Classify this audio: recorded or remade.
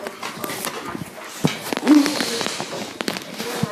recorded